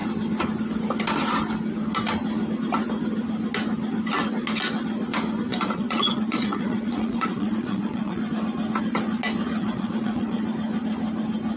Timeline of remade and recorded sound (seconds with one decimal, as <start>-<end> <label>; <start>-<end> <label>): 0.0-5.5 recorded; 5.5-8.2 remade; 8.2-9.6 recorded; 9.6-10.4 remade; 10.4-11.6 recorded